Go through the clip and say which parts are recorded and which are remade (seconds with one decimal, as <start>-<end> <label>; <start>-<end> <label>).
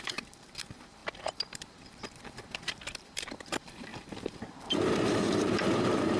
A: 0.0-6.2 remade